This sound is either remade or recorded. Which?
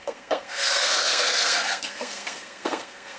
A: remade